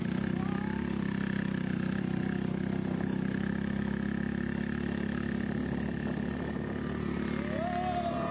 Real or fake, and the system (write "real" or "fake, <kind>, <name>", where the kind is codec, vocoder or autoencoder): real